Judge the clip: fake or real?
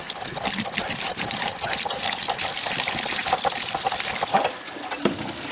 real